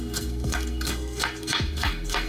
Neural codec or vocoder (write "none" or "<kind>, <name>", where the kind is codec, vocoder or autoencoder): codec, SNAC